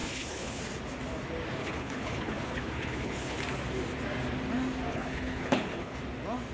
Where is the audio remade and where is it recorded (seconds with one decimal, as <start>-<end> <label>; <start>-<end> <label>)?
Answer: 0.0-0.6 remade; 0.6-1.6 recorded; 1.6-3.4 remade; 3.4-4.9 recorded; 4.9-6.0 remade; 6.0-6.5 recorded